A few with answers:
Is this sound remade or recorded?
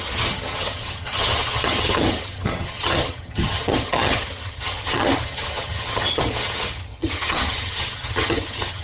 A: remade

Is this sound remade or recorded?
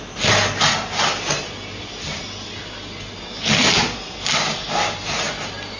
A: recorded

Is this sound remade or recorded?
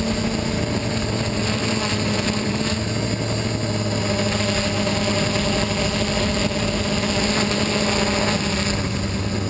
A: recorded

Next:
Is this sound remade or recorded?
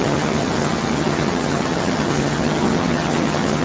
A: remade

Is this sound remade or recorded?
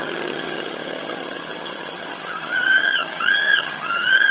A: remade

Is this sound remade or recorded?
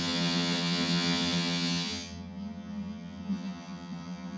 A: remade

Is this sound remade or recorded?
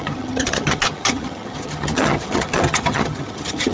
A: remade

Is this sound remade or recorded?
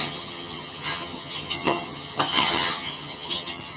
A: remade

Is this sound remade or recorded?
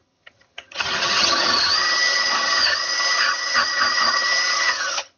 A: remade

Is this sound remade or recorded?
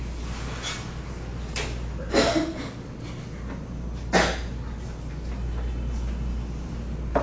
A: recorded